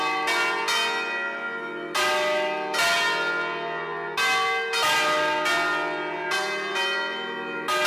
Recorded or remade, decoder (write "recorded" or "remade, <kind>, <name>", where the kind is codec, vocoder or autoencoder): recorded